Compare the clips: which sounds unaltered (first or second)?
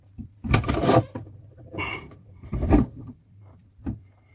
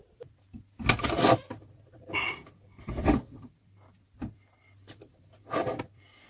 second